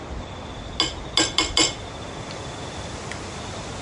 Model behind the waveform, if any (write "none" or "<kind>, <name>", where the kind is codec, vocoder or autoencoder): none